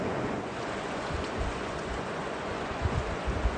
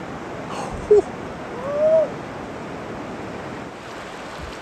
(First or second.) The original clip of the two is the second